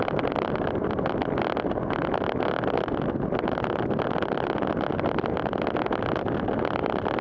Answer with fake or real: real